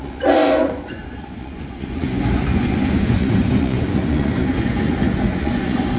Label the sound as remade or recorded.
remade